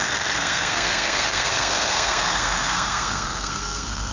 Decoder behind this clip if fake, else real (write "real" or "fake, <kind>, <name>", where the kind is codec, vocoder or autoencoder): fake, codec, SNAC